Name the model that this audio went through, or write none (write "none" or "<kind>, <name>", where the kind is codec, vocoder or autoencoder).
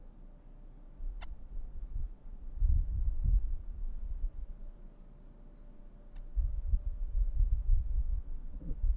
none